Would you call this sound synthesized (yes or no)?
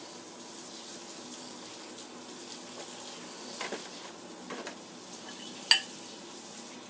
no